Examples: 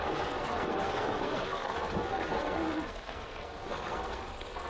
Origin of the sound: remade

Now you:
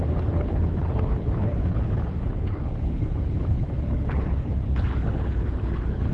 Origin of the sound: remade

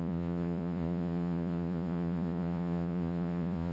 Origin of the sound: remade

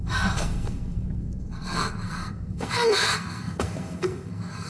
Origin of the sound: remade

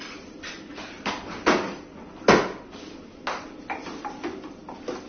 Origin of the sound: recorded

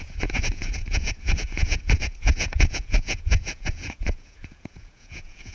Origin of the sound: remade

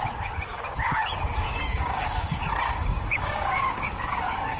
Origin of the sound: remade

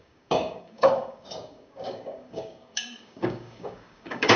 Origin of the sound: remade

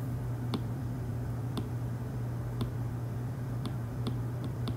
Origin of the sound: remade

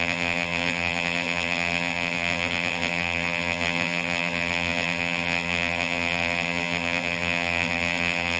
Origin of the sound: remade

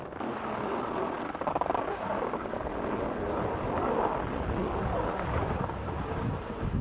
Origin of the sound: recorded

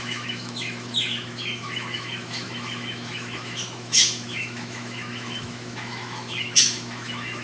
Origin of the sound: remade